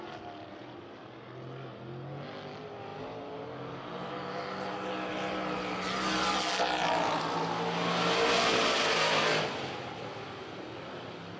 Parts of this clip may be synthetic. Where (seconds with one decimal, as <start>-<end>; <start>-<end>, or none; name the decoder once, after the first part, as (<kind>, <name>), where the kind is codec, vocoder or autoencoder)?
none